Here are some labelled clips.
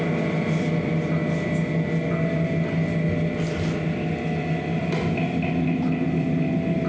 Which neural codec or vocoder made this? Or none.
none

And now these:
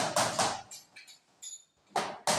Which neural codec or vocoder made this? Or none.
none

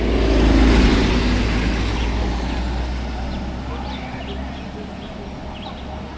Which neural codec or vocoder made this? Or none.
none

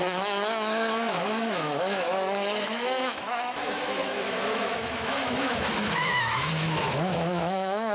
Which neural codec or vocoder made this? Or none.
autoencoder, DAC-VAE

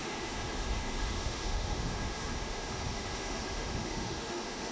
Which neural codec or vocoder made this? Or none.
autoencoder, DAC-VAE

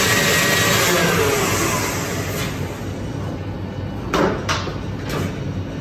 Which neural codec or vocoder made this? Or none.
none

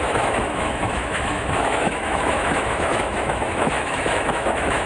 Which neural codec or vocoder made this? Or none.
autoencoder, DAC-VAE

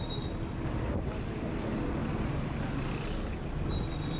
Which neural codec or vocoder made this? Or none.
none